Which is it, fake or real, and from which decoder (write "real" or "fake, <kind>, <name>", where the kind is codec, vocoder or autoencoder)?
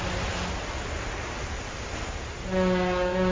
real